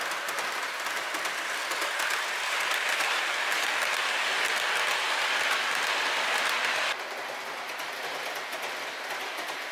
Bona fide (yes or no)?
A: yes